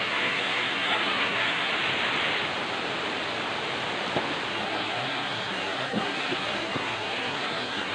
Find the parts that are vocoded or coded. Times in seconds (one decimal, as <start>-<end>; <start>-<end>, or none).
0.0-1.7; 4.5-7.9

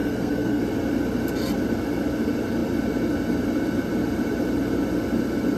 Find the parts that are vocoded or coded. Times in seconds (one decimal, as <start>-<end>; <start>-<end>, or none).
0.0-0.6

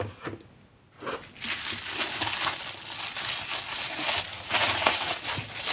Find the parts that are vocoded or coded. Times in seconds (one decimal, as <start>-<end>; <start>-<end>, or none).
4.3-5.2

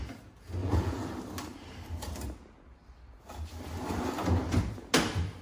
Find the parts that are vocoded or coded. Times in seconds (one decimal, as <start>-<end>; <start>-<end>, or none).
0.6-1.1

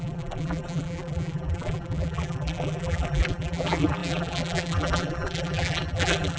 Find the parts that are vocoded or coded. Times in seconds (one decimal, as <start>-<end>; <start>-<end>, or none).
0.0-6.4